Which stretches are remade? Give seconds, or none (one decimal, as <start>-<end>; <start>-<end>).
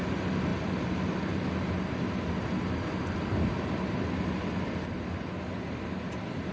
none